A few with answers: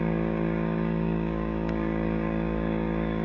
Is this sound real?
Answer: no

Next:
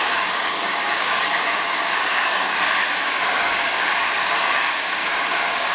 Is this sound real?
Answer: no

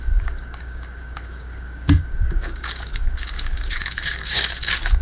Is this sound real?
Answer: no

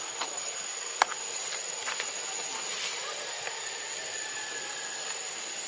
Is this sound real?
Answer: yes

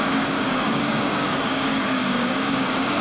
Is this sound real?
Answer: no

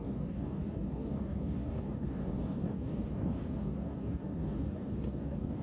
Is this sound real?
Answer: no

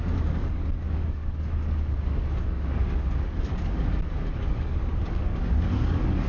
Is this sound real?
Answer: no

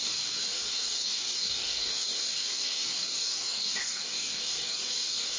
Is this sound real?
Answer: no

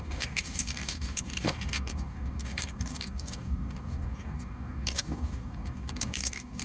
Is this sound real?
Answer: no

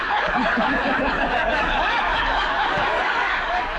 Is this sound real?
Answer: no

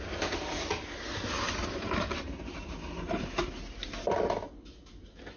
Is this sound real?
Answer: yes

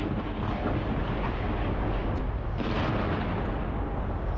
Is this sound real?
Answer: yes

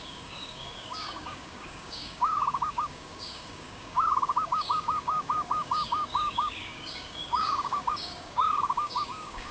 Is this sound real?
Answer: no